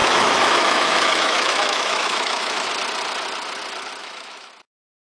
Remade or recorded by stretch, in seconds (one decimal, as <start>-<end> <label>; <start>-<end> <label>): 0.0-2.7 remade; 2.7-4.0 recorded; 4.0-4.5 remade; 4.5-5.1 recorded